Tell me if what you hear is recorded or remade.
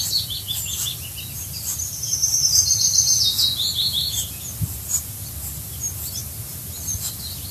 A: recorded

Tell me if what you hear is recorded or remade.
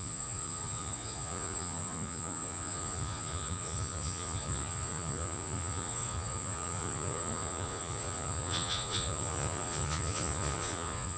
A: remade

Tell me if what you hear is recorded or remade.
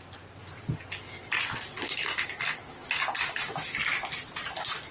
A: recorded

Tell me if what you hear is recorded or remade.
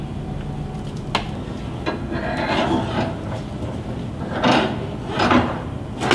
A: recorded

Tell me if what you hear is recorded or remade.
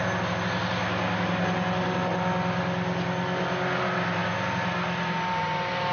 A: recorded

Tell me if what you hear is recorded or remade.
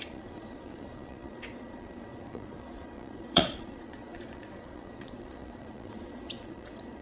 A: remade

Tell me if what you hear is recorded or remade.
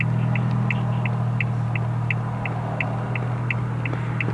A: recorded